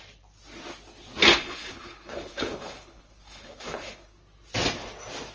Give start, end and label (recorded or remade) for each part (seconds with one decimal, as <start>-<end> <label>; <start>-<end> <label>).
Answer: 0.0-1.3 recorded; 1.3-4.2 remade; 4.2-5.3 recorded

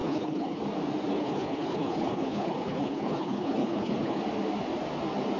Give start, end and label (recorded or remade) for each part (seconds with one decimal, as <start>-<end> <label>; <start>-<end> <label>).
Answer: 0.0-0.6 remade; 0.6-1.1 recorded; 1.1-4.2 remade; 4.2-5.4 recorded

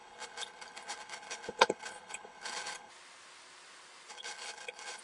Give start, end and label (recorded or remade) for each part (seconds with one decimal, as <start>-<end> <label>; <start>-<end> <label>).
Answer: 0.0-2.9 remade; 2.9-4.1 recorded; 4.1-5.0 remade

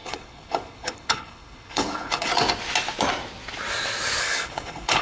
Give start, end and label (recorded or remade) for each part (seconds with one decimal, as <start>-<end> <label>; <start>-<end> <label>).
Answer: 0.0-2.3 remade; 2.3-4.2 recorded; 4.2-5.0 remade